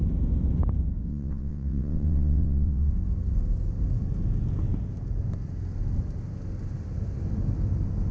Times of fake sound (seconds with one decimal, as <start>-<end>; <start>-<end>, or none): 1.1-2.9